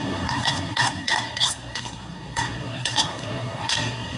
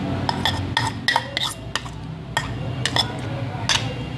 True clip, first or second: second